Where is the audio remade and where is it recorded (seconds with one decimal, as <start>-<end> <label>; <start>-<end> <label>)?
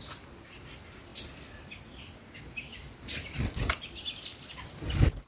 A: 0.0-5.3 recorded